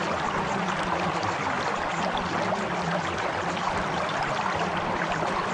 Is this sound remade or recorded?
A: remade